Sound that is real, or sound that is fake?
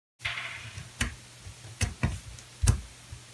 real